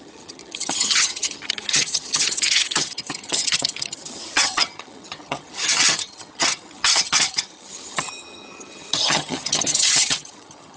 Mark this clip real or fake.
fake